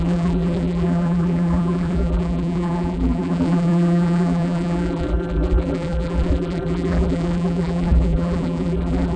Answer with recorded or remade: remade